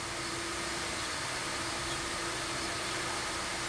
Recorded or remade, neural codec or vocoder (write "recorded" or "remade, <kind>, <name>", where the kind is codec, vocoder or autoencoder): recorded